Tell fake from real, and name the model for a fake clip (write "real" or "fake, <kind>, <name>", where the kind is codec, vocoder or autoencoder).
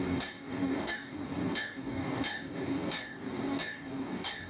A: fake, codec, DAC